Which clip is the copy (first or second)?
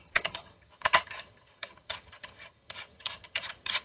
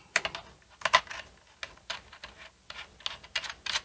first